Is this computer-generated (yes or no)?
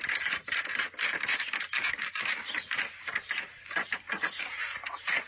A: yes